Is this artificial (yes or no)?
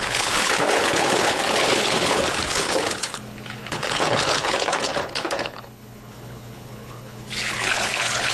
yes